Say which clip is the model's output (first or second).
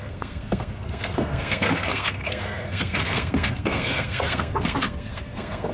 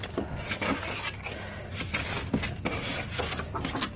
first